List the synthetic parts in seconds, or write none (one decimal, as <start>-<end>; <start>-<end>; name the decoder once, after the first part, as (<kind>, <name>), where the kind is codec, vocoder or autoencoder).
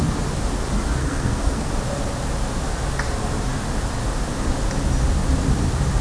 1.0-1.7 (codec, SNAC)